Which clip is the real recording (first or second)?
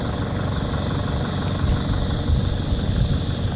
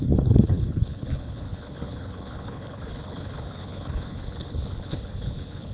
first